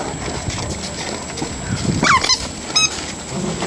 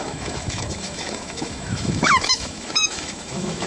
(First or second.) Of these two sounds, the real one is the first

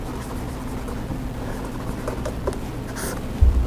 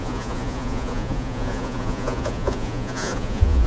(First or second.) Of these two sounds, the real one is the first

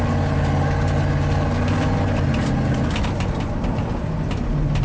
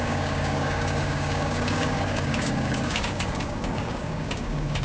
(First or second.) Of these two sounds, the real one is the first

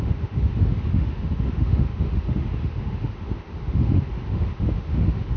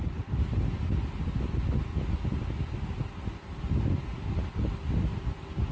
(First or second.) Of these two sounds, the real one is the second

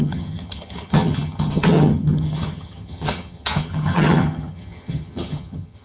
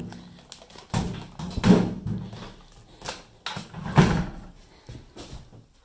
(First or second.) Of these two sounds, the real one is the second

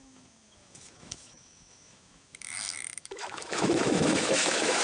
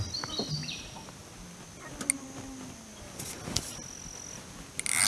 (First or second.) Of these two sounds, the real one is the second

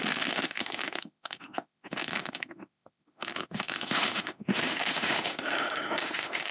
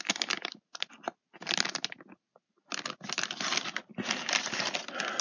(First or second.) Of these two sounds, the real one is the second